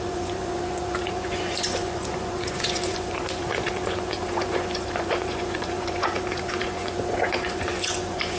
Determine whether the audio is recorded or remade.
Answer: remade